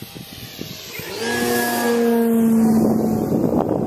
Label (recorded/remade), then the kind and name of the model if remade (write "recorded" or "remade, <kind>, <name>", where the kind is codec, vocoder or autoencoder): recorded